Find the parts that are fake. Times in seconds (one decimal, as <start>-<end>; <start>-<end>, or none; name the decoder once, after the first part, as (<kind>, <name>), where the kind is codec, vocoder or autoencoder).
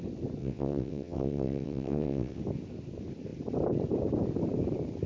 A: 0.4-2.4 (vocoder, WaveNeXt)